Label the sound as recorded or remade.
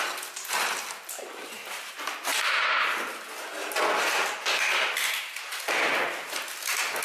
recorded